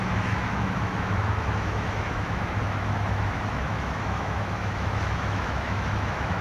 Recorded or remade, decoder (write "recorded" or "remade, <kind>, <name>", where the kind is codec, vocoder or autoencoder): remade, autoencoder, DAC-VAE